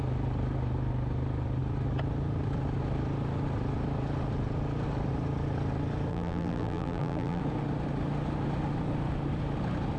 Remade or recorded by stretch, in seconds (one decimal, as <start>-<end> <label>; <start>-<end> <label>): 0.0-6.1 recorded; 6.1-7.4 remade; 7.4-10.0 recorded